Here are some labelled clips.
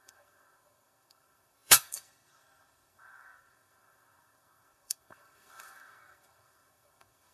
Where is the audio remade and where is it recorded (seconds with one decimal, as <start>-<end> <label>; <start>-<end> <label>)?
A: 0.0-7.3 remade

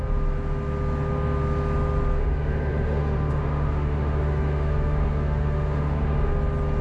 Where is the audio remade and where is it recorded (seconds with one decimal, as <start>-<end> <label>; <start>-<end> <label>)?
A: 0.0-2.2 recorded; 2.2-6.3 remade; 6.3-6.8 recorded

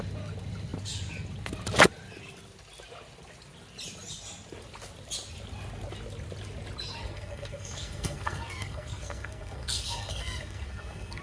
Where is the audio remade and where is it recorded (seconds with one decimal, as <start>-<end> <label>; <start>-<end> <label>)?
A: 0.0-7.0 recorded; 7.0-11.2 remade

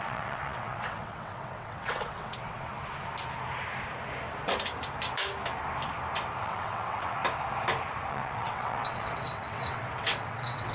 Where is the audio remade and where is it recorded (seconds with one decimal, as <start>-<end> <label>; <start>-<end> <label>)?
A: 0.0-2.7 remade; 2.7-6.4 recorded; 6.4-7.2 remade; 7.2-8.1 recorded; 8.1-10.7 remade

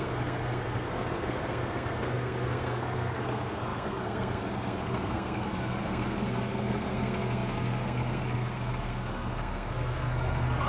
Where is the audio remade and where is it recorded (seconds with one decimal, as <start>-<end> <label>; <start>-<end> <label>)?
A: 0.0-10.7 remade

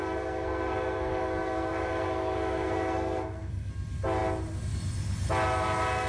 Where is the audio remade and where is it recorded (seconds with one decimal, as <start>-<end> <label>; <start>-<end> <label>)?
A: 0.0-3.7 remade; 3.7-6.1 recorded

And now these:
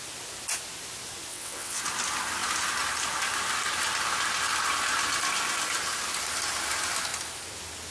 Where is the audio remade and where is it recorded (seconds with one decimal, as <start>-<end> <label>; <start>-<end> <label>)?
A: 0.0-1.3 recorded; 1.3-1.8 remade; 1.8-7.9 recorded

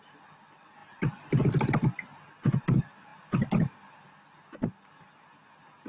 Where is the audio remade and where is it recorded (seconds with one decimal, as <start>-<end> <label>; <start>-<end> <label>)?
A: 0.0-5.9 recorded